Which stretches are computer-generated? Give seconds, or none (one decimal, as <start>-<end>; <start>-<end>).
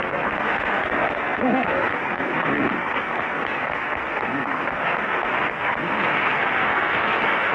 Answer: 0.0-7.5